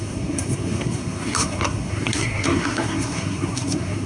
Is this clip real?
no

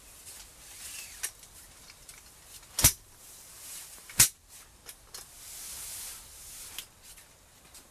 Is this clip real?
yes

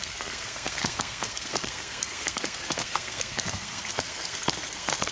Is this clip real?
no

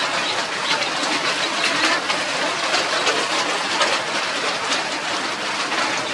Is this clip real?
yes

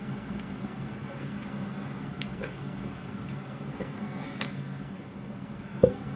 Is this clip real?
no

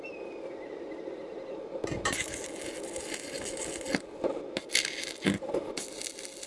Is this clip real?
yes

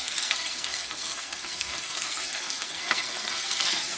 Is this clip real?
no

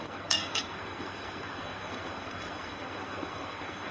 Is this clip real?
no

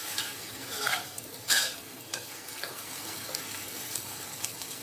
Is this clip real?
no